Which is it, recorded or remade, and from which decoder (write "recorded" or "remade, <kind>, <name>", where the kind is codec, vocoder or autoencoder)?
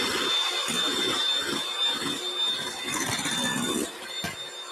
recorded